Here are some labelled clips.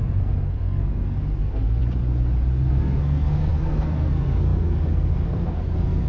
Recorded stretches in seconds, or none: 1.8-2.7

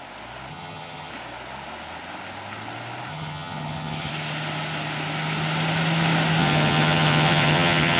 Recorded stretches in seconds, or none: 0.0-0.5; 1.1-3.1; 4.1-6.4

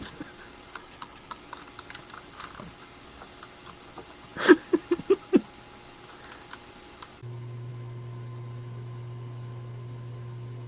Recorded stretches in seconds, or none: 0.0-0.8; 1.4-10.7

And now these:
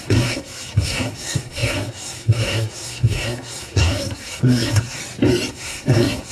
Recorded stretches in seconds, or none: 5.0-5.5

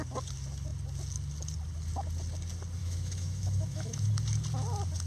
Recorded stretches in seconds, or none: 0.0-2.8; 4.1-5.1

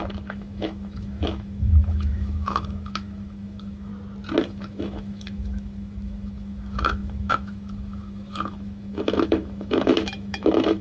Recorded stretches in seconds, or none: 3.9-4.4